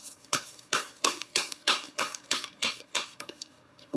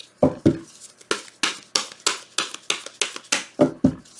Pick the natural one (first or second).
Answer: second